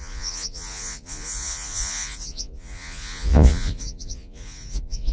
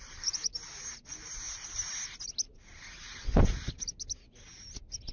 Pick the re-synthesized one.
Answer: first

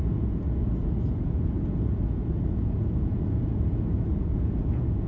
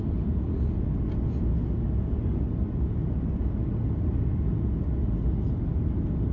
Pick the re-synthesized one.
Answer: first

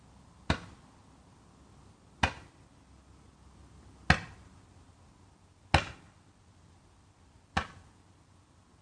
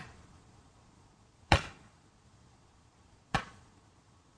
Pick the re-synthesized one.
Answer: second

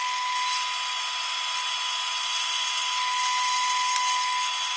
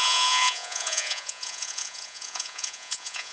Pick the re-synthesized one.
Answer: second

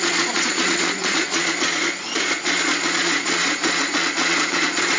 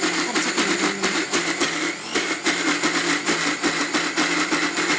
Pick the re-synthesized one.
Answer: first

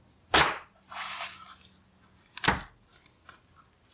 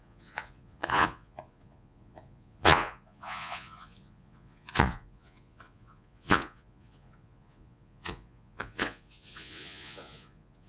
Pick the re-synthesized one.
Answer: second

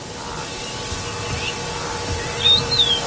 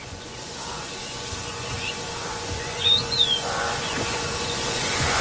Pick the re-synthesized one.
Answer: second